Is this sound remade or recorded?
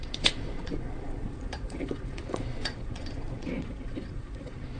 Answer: remade